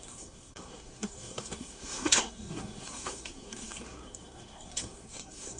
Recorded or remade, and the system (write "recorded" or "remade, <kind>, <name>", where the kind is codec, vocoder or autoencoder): remade, codec, SNAC